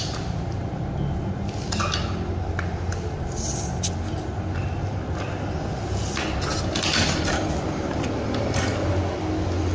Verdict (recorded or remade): recorded